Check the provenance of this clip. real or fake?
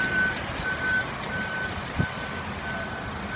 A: real